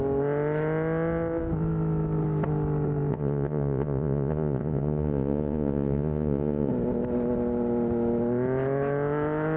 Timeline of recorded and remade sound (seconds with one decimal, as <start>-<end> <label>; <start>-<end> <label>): 0.0-3.1 recorded; 3.1-6.7 remade; 6.7-9.6 recorded